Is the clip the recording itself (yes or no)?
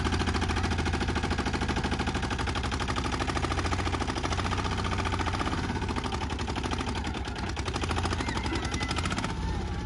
yes